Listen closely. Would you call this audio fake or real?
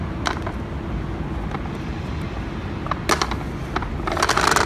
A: real